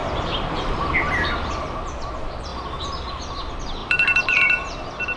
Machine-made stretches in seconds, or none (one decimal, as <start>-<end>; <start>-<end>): 0.0-2.5; 3.1-5.2